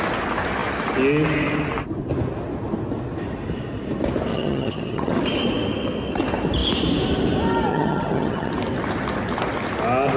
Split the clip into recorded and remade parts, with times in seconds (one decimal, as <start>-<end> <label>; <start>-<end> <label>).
0.0-4.3 recorded; 4.3-5.2 remade; 5.2-7.7 recorded; 7.7-8.5 remade; 8.5-10.2 recorded